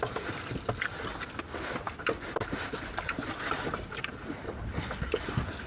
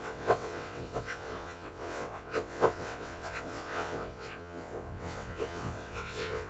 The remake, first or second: second